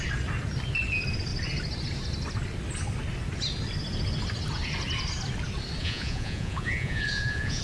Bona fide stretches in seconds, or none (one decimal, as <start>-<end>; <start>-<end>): 0.0-5.8